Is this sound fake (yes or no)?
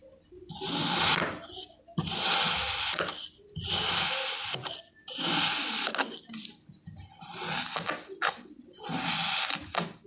no